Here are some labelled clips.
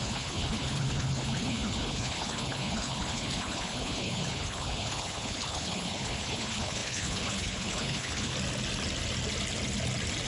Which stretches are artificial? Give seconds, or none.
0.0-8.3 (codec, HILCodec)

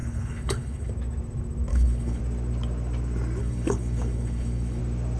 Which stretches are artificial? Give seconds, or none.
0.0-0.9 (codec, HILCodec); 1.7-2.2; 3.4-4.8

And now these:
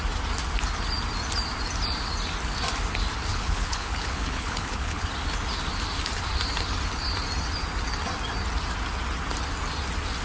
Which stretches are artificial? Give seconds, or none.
3.3-5.1 (codec, HILCodec)